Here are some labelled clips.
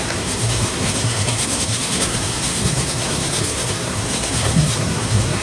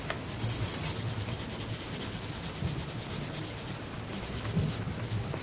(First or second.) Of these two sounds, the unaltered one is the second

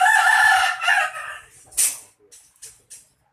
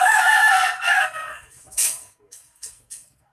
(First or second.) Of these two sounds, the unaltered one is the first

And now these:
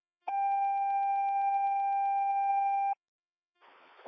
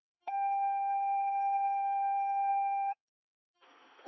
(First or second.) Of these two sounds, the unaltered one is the first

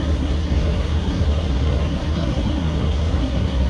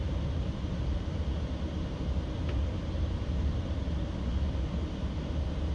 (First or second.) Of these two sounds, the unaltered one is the second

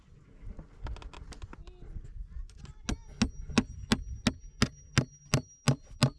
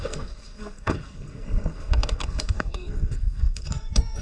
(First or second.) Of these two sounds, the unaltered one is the first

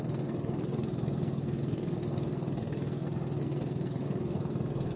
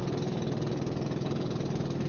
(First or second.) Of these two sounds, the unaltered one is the second